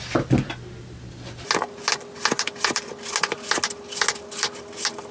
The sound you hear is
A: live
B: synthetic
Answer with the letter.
A